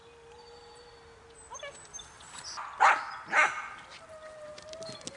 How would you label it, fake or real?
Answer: real